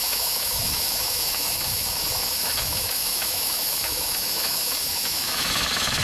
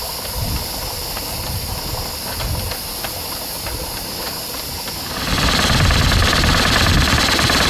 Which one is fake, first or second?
first